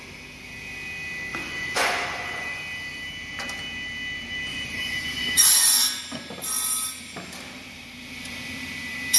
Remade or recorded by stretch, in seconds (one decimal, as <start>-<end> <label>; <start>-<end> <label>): 0.0-1.3 recorded; 1.3-2.6 remade; 2.6-4.5 recorded; 4.5-6.0 remade; 6.0-9.2 recorded